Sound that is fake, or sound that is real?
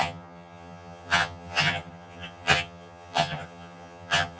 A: fake